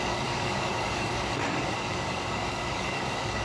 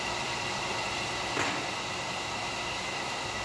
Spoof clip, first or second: first